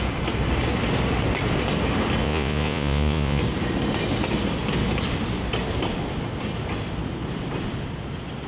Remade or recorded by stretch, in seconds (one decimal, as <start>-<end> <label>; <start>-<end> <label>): 0.0-2.2 recorded; 2.2-3.4 remade; 3.4-8.5 recorded